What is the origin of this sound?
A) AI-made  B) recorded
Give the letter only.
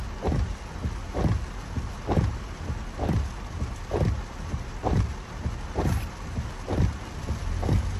B